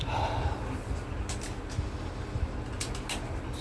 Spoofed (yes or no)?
no